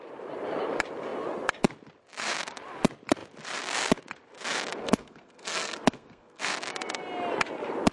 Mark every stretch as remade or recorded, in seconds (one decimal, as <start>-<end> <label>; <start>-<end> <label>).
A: 0.0-4.8 recorded; 4.8-6.4 remade; 6.4-7.9 recorded